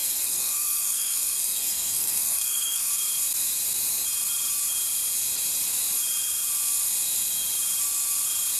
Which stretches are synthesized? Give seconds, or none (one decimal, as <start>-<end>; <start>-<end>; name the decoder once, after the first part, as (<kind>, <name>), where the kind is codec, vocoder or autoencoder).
0.0-2.9 (codec, SNAC)